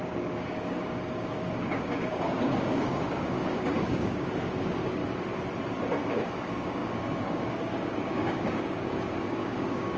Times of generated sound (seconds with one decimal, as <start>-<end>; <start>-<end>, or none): 0.0-5.0; 6.1-10.0